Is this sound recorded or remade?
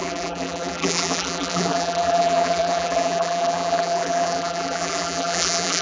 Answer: remade